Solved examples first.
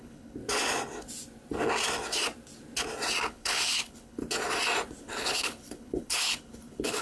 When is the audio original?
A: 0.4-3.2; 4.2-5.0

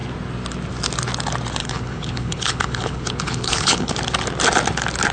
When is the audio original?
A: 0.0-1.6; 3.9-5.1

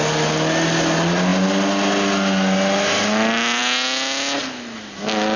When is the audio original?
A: 0.0-5.4

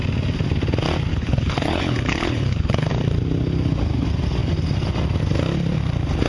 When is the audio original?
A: 0.0-1.1; 2.9-6.3